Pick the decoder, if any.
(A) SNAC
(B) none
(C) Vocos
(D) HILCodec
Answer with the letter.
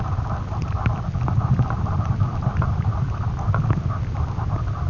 B